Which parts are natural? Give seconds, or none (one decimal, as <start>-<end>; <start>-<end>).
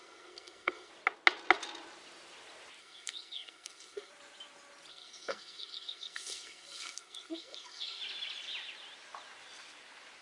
0.9-2.8; 4.1-4.9; 8.0-10.2